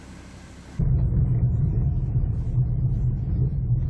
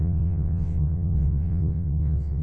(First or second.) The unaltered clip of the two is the first